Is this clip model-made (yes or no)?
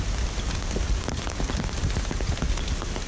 no